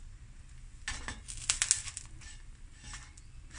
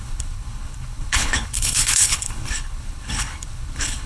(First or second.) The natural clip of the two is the first